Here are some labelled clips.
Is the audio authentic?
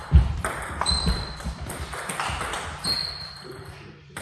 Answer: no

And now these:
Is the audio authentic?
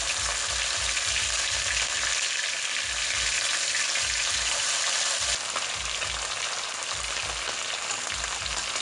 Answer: yes